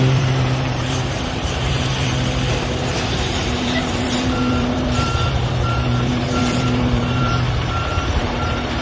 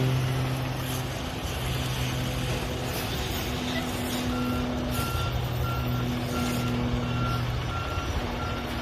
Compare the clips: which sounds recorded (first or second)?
second